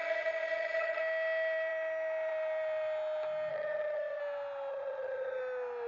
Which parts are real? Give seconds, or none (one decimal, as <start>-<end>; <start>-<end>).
1.0-3.5; 4.2-4.7; 5.4-5.9